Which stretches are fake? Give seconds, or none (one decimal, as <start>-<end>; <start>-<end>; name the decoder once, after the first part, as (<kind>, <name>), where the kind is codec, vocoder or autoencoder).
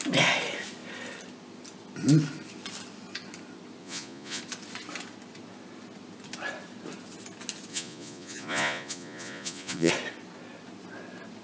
3.8-4.4 (vocoder, Vocos); 7.7-9.9